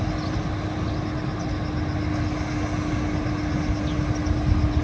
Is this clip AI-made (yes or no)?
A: no